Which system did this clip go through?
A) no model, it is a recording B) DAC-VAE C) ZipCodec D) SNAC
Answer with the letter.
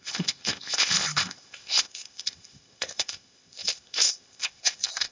C